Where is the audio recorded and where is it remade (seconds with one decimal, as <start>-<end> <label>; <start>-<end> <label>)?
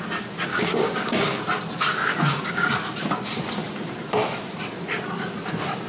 0.0-0.5 recorded; 0.5-1.4 remade; 1.4-2.0 recorded; 2.0-2.7 remade; 2.7-5.9 recorded